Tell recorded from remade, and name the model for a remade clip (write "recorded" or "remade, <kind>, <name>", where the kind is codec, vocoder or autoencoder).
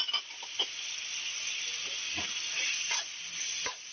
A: recorded